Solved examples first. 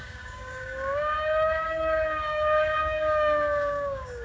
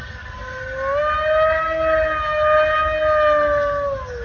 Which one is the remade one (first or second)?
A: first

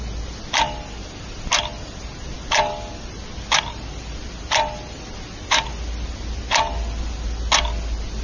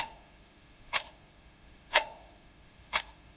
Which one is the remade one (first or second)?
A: second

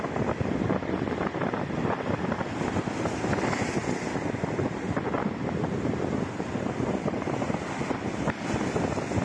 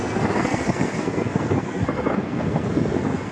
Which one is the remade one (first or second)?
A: second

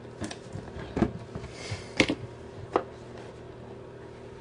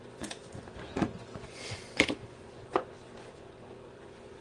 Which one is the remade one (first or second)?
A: second